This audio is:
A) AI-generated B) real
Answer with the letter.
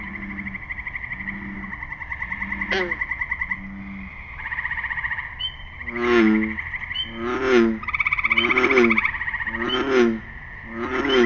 B